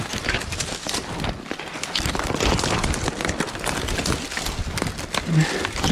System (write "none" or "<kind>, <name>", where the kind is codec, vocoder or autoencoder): none